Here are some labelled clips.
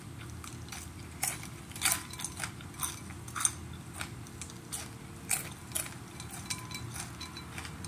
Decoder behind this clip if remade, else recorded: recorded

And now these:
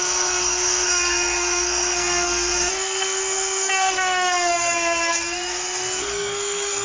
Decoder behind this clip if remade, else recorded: remade, codec, SNAC